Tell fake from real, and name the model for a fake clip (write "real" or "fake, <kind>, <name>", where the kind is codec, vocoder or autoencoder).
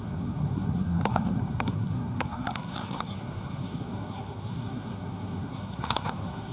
fake, codec, SNAC